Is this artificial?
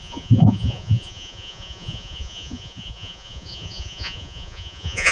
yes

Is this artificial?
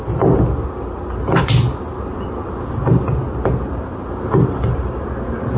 no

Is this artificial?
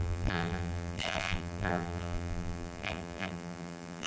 yes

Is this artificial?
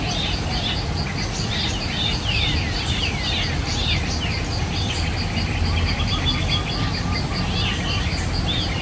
no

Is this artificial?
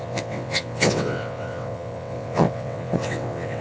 yes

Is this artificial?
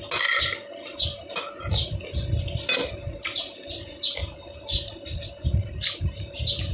no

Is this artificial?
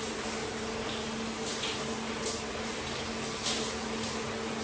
no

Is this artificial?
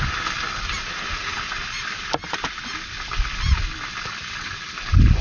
no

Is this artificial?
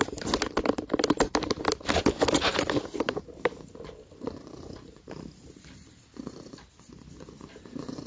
no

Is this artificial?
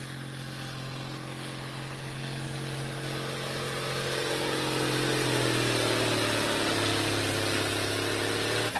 no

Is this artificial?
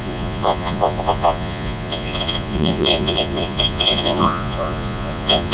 yes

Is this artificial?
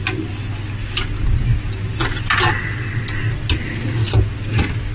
no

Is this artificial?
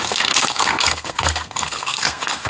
yes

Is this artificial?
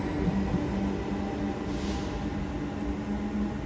no